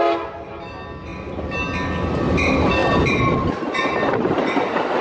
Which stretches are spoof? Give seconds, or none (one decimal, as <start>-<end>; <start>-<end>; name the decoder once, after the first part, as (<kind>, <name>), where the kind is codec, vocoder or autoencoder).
none